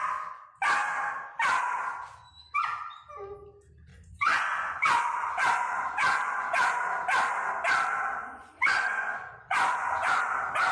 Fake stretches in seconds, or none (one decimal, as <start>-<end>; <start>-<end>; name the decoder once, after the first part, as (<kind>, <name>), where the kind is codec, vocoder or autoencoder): 3.9-6.8 (vocoder, Vocos); 8.2-10.2